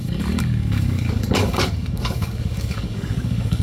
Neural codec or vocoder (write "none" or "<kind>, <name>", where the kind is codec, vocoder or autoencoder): codec, DAC